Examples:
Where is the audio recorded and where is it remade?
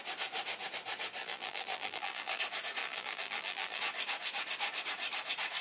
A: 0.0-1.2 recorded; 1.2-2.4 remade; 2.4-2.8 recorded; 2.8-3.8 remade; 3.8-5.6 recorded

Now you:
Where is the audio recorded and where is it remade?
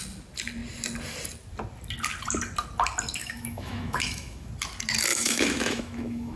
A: 0.0-3.2 recorded; 3.2-4.5 remade; 4.5-5.1 recorded; 5.1-6.4 remade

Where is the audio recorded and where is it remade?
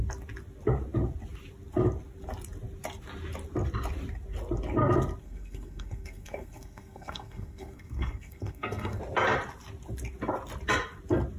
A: 0.0-5.2 recorded; 5.2-9.0 remade; 9.0-11.4 recorded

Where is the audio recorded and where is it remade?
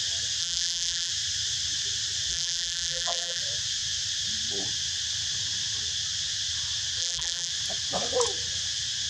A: 0.0-0.4 recorded; 0.4-1.1 remade; 1.1-2.3 recorded; 2.3-3.4 remade; 3.4-7.0 recorded; 7.0-7.5 remade; 7.5-9.1 recorded